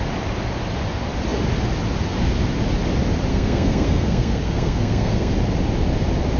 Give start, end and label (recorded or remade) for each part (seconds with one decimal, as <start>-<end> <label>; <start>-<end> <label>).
0.0-3.3 recorded; 3.3-5.3 remade; 5.3-6.4 recorded